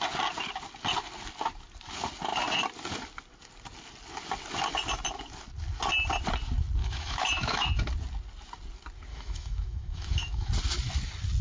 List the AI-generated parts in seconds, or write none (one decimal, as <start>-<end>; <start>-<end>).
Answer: 6.8-7.9; 9.1-10.5